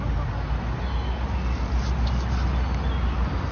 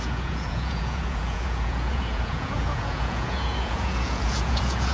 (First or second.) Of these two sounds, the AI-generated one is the second